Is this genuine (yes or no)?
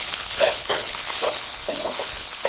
no